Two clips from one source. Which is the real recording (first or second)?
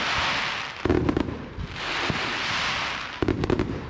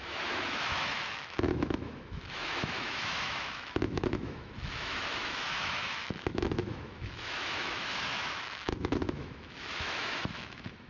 first